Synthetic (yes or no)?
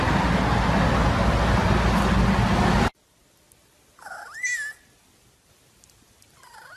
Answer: no